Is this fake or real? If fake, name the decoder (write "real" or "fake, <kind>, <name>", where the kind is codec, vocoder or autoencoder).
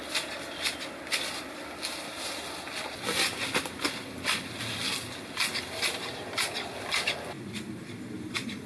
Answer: real